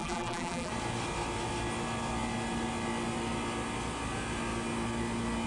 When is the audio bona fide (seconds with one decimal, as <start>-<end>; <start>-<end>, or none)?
0.7-5.5